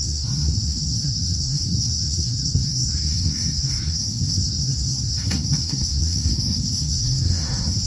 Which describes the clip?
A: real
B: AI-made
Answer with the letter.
B